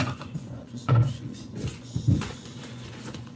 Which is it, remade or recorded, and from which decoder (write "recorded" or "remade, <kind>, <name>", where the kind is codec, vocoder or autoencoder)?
remade, vocoder, Vocos